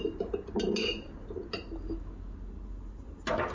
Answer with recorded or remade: recorded